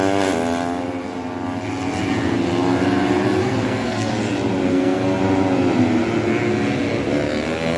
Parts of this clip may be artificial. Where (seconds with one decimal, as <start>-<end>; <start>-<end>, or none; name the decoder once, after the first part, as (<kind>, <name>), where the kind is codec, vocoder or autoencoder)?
3.4-4.1 (codec, SNAC); 4.7-5.2